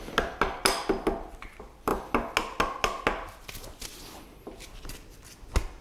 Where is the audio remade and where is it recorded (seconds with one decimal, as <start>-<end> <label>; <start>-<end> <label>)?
0.0-5.8 recorded